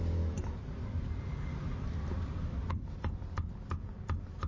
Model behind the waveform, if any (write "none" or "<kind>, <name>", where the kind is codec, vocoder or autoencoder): none